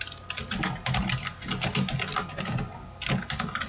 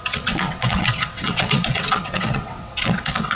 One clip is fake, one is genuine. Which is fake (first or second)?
second